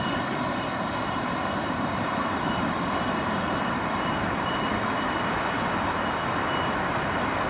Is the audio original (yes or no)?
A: no